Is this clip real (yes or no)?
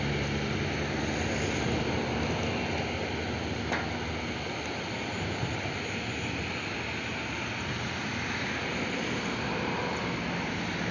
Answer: yes